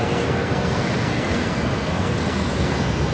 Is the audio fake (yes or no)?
yes